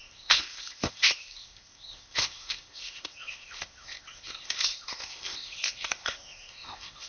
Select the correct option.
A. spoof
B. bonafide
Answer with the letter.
A